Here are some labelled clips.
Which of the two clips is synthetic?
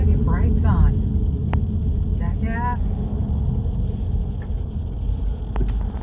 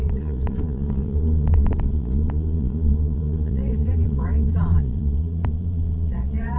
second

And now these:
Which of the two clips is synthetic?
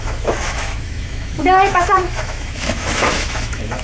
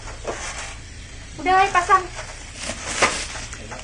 first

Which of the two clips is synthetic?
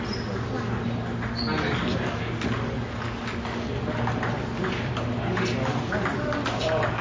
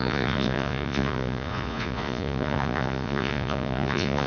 second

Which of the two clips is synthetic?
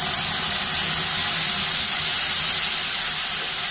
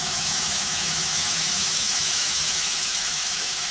second